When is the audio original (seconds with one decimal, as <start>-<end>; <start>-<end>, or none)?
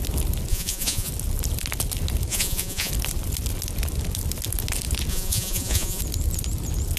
0.0-0.5; 1.1-2.3; 2.9-5.1; 6.0-7.0